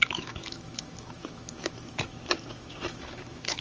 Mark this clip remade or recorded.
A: remade